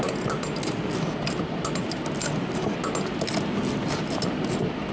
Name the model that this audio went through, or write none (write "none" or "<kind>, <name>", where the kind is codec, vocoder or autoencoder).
none